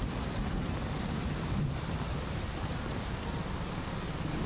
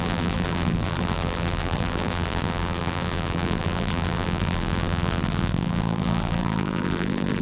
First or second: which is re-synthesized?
second